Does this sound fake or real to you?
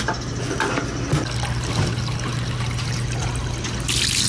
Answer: real